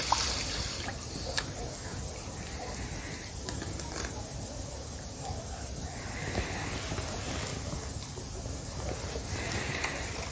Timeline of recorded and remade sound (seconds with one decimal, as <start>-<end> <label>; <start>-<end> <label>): 0.0-10.3 recorded